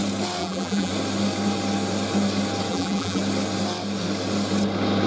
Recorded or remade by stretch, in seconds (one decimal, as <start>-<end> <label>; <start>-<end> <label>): 0.0-0.4 recorded; 0.4-0.9 remade; 0.9-2.7 recorded; 2.7-3.2 remade; 3.2-5.1 recorded